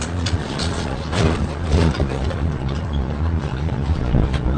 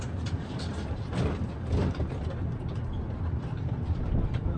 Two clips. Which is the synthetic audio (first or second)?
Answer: first